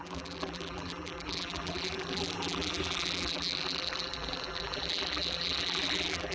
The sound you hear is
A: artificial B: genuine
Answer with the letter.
A